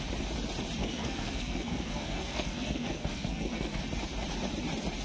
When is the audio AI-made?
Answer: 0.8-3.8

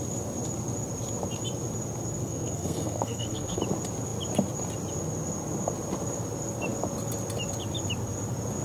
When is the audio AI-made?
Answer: 2.2-3.6

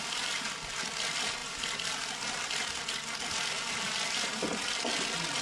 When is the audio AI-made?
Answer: none

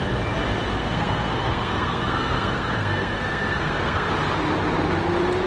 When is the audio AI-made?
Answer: 0.8-4.1